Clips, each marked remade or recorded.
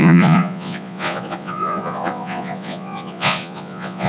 remade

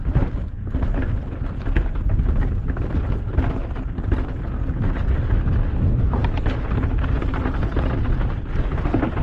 recorded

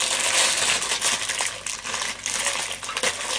recorded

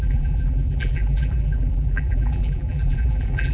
remade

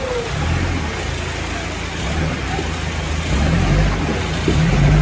recorded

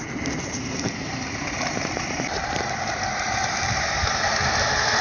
remade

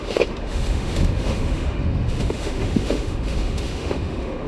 remade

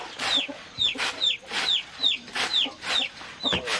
recorded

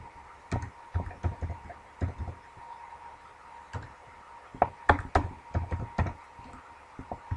recorded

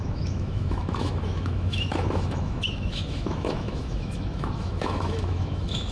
remade